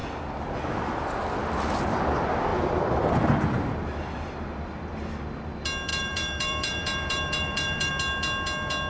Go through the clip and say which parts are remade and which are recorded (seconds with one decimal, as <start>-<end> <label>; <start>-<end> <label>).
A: 0.0-2.5 recorded; 2.5-3.1 remade; 3.1-5.9 recorded; 5.9-7.9 remade; 7.9-8.9 recorded